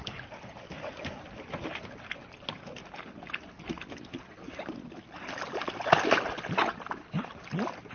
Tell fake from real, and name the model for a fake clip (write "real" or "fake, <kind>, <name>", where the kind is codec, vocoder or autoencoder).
real